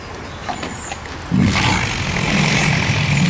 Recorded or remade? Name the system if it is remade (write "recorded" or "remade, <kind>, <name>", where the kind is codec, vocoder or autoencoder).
recorded